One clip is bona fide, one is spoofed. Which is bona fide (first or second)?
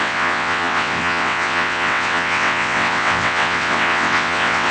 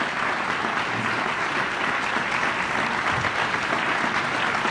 second